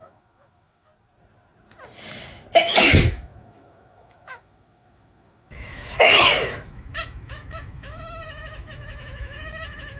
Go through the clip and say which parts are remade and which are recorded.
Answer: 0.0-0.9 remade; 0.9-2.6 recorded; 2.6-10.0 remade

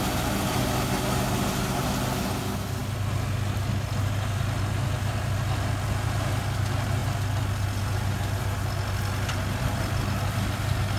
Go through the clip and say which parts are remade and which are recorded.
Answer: 0.0-11.0 recorded

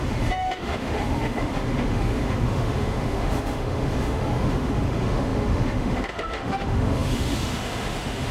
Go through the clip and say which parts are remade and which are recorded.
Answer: 0.0-8.3 remade

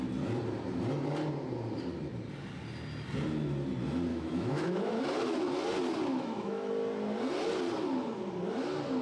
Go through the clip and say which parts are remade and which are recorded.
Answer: 0.0-4.1 recorded; 4.1-5.0 remade; 5.0-6.1 recorded; 6.1-6.7 remade; 6.7-9.0 recorded